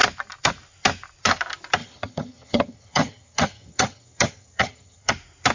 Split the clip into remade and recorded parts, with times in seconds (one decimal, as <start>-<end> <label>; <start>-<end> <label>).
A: 0.0-1.8 recorded; 1.8-5.1 remade; 5.1-5.5 recorded